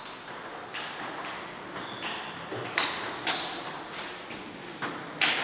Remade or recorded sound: recorded